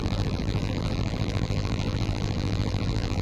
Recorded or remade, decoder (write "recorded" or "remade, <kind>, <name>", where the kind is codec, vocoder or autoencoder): remade, vocoder, BigVGAN v2